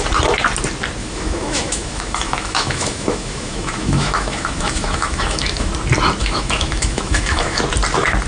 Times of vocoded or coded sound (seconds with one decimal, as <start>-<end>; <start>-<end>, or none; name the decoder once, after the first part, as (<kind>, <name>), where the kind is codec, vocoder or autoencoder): 1.0-5.7 (autoencoder, DAC-VAE); 6.2-7.6